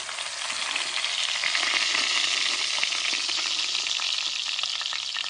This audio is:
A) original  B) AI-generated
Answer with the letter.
A